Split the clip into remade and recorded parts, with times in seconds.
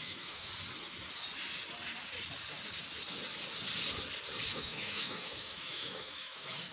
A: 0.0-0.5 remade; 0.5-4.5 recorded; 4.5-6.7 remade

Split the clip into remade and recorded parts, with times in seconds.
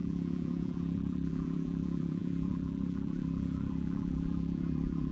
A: 0.0-5.1 remade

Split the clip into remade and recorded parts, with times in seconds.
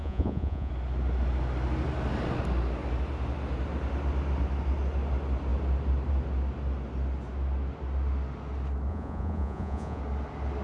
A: 0.0-0.7 remade; 0.7-8.9 recorded; 8.9-10.0 remade; 10.0-10.6 recorded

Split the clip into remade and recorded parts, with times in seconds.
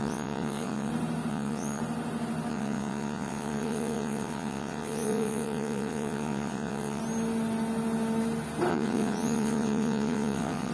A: 0.0-0.9 remade; 0.9-1.3 recorded; 1.3-1.8 remade; 1.8-2.5 recorded; 2.5-7.0 remade; 7.0-8.7 recorded; 8.7-10.7 remade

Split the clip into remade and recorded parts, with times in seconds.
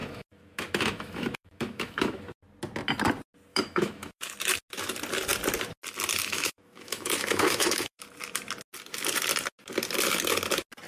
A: 0.0-2.2 remade; 2.2-3.5 recorded; 3.5-4.3 remade; 4.3-6.2 recorded; 6.2-8.0 remade; 8.0-10.9 recorded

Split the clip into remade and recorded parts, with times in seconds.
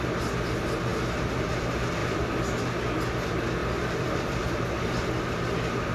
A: 0.0-0.9 recorded; 0.9-1.5 remade; 1.5-2.0 recorded; 2.0-2.6 remade; 2.6-3.6 recorded; 3.6-4.5 remade; 4.5-5.9 recorded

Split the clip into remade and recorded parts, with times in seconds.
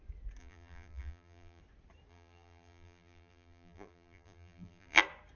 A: 0.0-0.4 recorded; 0.4-1.6 remade; 1.6-2.1 recorded; 2.1-5.0 remade; 5.0-5.4 recorded